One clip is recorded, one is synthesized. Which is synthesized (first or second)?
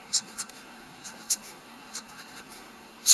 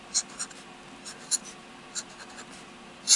first